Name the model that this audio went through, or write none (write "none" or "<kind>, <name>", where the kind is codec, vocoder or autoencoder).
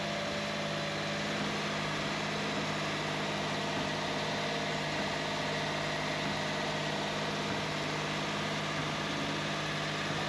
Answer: none